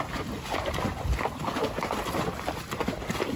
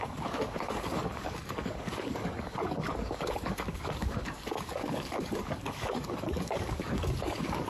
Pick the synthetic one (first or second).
second